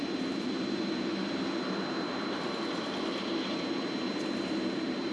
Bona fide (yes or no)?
yes